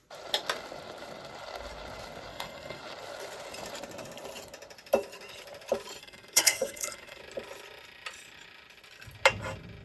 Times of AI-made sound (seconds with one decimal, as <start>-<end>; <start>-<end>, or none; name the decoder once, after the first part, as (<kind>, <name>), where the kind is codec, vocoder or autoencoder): 2.3-2.8 (codec, SNAC); 6.0-7.2